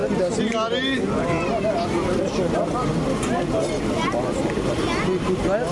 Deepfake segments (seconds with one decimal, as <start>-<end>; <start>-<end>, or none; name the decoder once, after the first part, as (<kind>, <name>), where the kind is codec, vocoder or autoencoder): none